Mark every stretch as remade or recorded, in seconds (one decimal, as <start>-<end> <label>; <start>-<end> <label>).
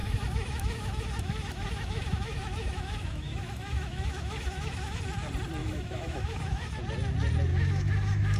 0.0-5.0 remade; 5.0-5.6 recorded; 5.6-6.8 remade; 6.8-7.5 recorded; 7.5-8.4 remade